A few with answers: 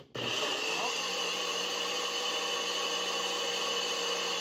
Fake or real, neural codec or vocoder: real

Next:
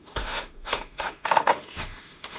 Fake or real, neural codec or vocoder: fake, autoencoder, DAC-VAE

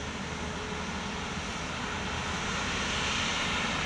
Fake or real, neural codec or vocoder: real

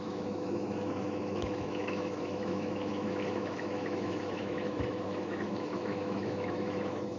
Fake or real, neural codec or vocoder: fake, autoencoder, DAC-VAE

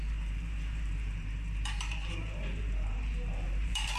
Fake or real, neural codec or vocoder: fake, vocoder, BigVGAN v2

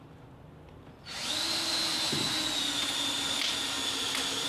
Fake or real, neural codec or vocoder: real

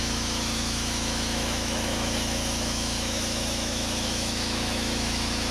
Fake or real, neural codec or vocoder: fake, autoencoder, DAC-VAE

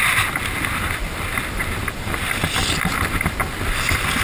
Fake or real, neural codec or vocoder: real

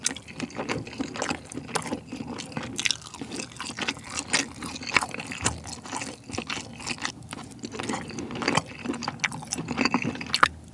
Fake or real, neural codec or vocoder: real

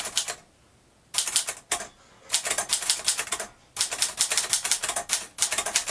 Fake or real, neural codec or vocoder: real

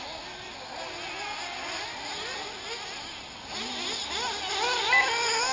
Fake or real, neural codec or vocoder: real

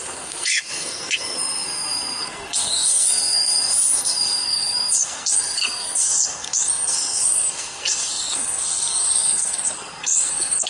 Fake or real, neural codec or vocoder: fake, codec, SNAC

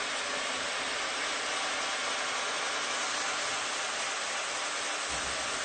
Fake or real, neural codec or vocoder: real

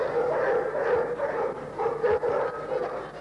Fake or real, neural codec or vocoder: real